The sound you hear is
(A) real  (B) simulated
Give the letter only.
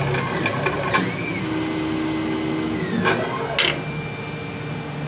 A